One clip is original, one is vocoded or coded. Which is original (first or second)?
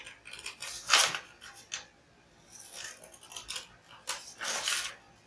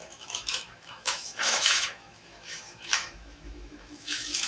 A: first